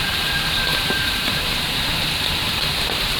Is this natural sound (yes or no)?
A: no